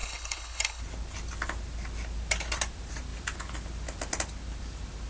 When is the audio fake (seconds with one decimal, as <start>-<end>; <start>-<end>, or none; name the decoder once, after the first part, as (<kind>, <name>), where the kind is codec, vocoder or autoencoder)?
0.0-0.8 (codec, HILCodec)